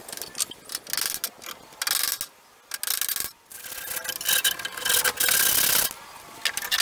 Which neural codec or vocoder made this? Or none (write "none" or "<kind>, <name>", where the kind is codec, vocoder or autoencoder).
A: none